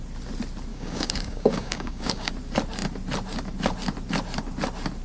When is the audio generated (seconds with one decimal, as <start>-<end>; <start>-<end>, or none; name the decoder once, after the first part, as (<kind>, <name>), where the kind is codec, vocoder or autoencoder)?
0.7-2.3 (codec, DAC)